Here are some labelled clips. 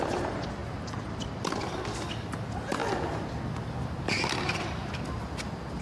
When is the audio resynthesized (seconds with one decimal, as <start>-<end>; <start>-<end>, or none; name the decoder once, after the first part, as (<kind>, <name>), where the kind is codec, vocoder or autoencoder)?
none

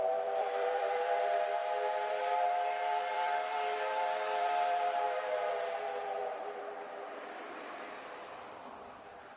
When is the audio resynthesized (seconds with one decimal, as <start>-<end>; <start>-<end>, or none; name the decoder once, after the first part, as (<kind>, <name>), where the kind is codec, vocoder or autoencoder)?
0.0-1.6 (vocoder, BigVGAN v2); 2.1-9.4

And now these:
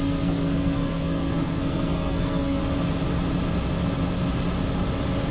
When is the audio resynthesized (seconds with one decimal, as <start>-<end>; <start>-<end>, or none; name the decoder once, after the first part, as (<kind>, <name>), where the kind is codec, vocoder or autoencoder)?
0.0-2.6 (codec, SNAC)

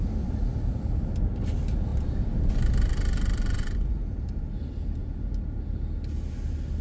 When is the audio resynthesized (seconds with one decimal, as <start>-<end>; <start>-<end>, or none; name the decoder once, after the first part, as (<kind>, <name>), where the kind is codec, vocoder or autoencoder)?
0.0-5.0 (vocoder, BigVGAN v2)

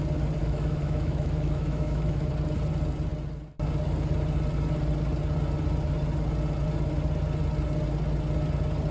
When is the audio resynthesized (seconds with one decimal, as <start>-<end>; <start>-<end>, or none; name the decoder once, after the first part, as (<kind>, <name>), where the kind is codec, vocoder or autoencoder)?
0.4-2.3 (autoencoder, DAC-VAE)